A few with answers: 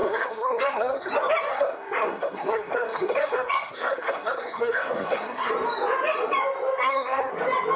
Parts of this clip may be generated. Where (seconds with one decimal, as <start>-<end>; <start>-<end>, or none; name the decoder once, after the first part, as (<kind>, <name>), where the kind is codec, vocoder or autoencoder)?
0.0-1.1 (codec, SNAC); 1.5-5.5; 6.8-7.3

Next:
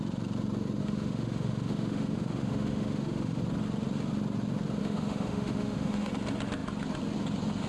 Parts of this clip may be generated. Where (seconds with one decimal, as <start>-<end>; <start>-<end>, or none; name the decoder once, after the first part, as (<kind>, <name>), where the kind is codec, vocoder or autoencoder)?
0.8-3.4 (autoencoder, DAC-VAE); 4.8-6.1

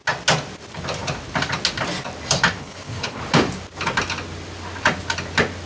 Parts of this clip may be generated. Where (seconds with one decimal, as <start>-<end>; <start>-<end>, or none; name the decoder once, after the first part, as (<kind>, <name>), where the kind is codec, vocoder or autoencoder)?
2.6-3.2 (codec, HILCodec)

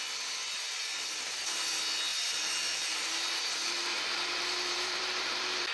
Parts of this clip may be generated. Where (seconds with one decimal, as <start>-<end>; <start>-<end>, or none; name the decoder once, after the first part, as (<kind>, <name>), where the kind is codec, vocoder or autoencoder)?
2.1-5.7 (vocoder, BigVGAN v2)